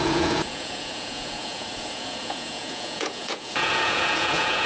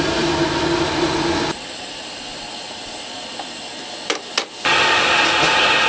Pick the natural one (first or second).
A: second